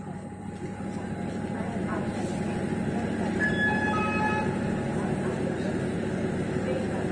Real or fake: real